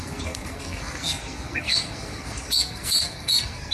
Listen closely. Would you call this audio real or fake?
fake